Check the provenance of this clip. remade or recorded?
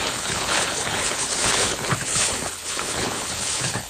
remade